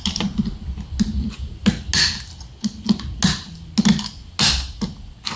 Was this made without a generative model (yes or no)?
yes